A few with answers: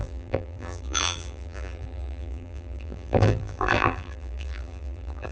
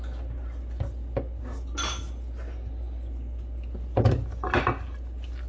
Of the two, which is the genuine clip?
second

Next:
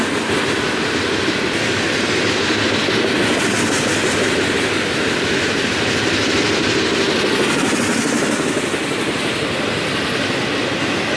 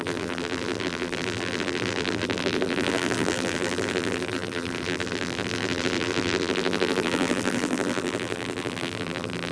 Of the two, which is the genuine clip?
first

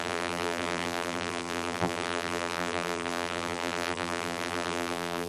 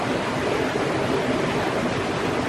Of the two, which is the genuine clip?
second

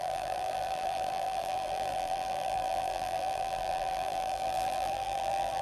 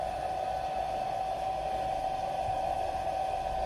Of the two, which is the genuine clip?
second